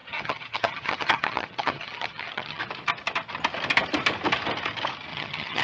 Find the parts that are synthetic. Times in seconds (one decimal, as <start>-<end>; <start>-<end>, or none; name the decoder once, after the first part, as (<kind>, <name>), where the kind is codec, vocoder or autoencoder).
0.0-2.6 (vocoder, HiFi-GAN); 5.1-5.6